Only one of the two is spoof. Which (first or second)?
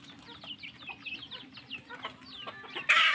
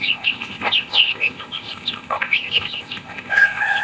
second